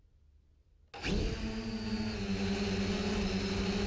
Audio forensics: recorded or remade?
recorded